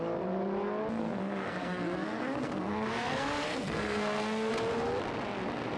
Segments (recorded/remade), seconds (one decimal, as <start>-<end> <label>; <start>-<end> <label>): 0.0-1.0 recorded; 1.0-4.5 remade; 4.5-5.8 recorded